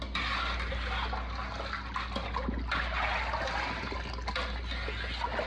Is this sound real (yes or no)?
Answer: yes